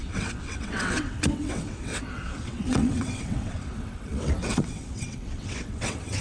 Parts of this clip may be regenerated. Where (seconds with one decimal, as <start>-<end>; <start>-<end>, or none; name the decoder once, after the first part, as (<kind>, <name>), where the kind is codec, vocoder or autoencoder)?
0.0-6.2 (vocoder, WaveNeXt)